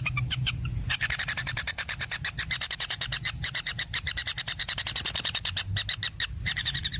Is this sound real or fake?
real